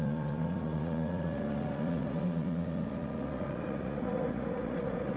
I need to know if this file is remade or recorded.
remade